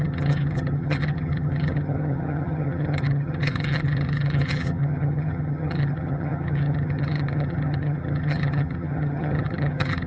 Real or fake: fake